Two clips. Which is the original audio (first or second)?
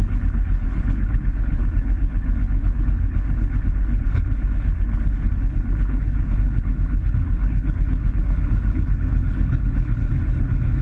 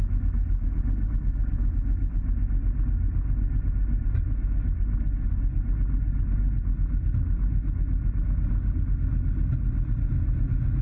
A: second